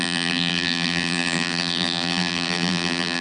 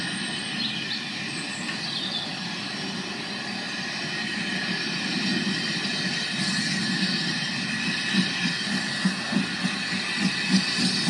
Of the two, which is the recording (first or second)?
second